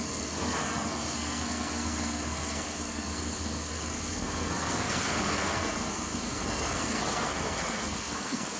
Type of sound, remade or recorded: remade